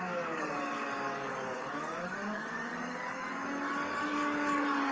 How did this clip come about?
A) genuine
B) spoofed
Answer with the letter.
B